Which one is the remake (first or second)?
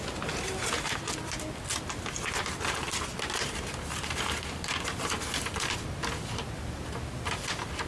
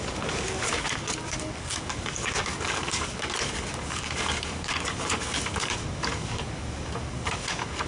second